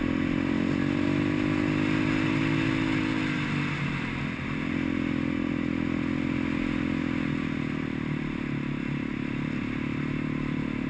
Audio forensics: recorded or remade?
recorded